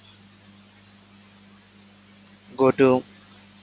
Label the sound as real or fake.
real